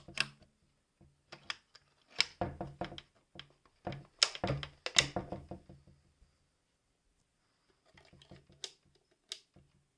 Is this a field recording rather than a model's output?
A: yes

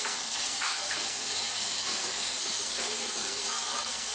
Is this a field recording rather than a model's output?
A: no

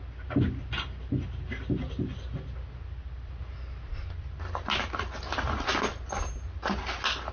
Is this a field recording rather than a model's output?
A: yes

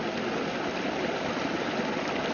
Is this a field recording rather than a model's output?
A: yes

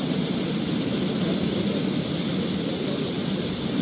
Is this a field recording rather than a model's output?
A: yes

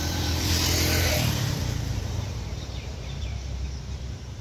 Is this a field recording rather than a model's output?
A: no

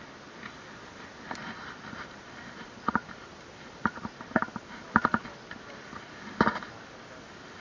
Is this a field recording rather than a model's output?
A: yes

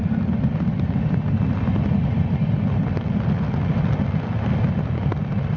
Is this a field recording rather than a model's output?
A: yes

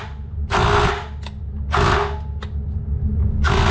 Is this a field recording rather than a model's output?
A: yes